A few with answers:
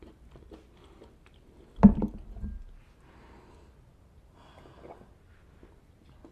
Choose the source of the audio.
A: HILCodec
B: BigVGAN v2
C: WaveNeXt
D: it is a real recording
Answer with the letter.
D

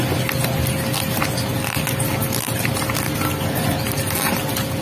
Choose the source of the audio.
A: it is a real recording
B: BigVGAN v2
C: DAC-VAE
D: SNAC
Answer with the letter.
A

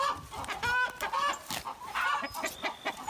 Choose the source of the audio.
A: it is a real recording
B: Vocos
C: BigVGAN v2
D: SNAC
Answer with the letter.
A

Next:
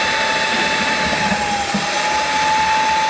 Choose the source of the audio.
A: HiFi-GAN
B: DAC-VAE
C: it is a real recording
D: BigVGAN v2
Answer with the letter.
C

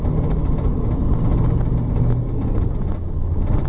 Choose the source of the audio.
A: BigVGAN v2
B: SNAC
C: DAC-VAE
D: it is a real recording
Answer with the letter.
D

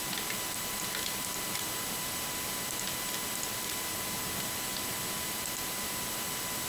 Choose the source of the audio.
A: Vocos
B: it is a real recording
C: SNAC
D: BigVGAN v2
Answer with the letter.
D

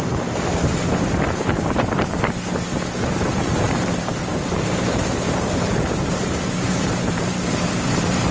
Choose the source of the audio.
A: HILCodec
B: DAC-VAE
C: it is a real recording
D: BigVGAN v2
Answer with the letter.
D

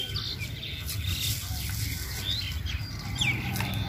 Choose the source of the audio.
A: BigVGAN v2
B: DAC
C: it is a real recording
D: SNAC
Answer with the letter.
C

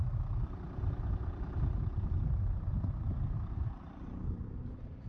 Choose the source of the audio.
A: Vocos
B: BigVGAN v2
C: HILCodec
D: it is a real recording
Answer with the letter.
B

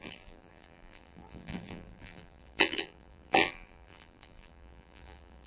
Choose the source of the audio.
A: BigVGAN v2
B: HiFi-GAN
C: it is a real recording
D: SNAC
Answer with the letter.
A